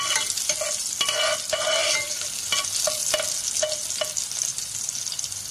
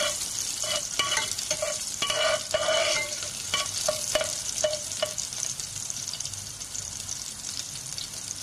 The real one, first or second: first